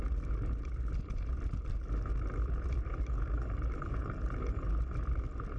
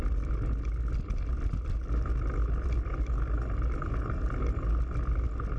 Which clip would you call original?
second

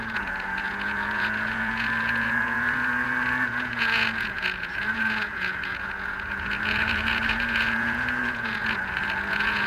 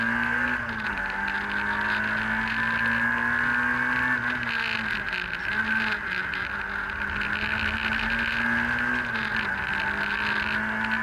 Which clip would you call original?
second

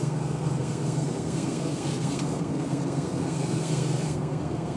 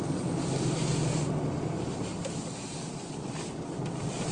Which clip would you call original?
second